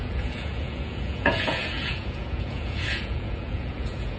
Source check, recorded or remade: remade